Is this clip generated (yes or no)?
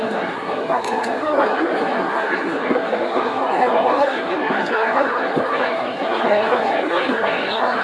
yes